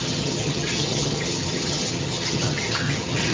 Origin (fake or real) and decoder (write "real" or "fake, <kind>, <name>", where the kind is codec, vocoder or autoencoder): fake, vocoder, HiFi-GAN